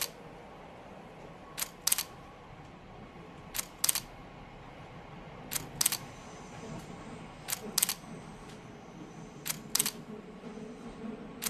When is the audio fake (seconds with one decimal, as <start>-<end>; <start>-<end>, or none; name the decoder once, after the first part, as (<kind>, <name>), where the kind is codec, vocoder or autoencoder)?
none

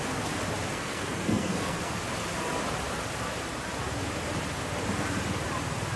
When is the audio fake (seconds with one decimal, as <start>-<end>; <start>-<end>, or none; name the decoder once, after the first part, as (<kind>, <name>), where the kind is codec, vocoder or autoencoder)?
0.7-2.0 (codec, SNAC)